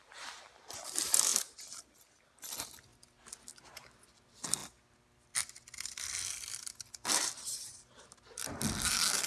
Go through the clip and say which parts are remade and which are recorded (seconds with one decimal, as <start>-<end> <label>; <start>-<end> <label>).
0.0-1.3 remade; 1.3-2.2 recorded; 2.2-2.9 remade; 2.9-3.7 recorded; 3.7-4.6 remade; 4.6-6.9 recorded; 6.9-9.3 remade